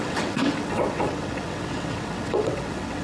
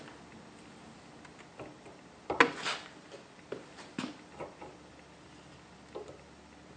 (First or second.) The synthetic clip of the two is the first